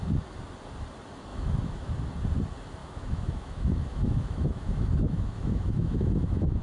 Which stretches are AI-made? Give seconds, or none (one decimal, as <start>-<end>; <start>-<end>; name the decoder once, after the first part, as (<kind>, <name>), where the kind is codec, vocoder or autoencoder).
1.3-1.9 (autoencoder, DAC-VAE); 2.8-6.6